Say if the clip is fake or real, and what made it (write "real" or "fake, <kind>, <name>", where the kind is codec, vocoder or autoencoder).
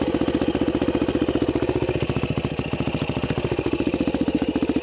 real